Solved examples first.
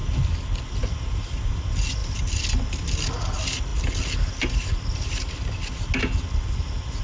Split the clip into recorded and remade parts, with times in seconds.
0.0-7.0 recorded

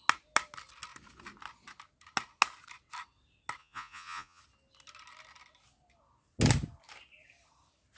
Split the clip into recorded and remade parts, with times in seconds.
0.0-3.6 recorded; 3.6-4.4 remade; 4.4-8.0 recorded

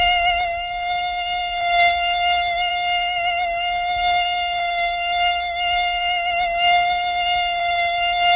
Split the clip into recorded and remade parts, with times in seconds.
0.0-8.4 recorded

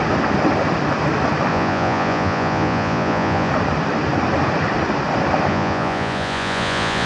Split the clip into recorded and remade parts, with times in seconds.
0.0-1.5 recorded; 1.5-3.5 remade; 3.5-5.5 recorded; 5.5-7.1 remade